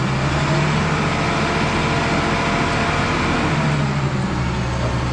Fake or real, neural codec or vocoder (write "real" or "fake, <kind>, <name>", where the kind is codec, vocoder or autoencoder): real